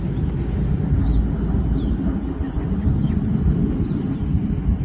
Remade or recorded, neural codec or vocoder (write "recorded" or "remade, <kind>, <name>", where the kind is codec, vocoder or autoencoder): recorded